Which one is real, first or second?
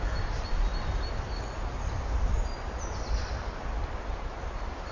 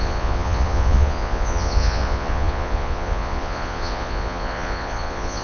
first